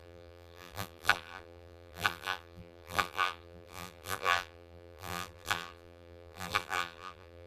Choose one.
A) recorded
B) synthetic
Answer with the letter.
B